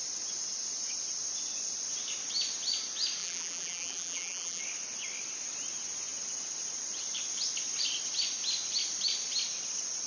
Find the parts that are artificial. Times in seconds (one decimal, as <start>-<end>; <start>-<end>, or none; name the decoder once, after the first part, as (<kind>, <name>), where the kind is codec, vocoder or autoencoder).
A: 3.2-4.6 (vocoder, BigVGAN v2)